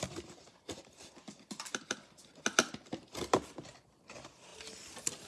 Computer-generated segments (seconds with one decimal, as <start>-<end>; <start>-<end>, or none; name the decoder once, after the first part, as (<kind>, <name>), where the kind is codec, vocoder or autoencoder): none